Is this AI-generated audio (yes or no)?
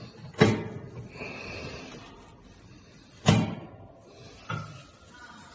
no